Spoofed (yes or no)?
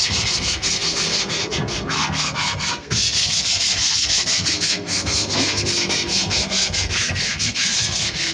yes